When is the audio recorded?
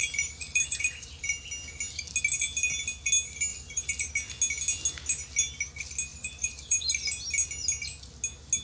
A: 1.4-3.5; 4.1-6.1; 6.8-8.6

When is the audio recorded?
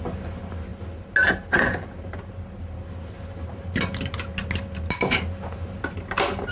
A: 0.0-6.5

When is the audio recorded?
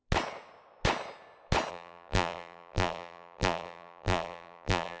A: 0.0-1.7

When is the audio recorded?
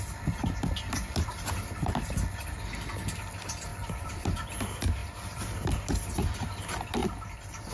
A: 0.0-3.7; 4.2-5.0; 5.7-7.0